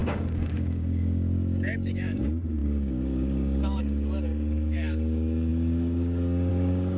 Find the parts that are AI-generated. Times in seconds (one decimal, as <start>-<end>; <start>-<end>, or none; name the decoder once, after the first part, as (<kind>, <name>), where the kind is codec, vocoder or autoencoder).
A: 0.0-7.0 (codec, DAC)